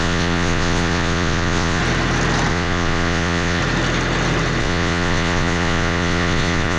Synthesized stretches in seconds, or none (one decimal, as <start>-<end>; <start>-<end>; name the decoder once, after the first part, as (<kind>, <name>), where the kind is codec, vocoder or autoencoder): 0.0-1.8 (vocoder, Vocos); 2.5-3.6; 4.6-6.8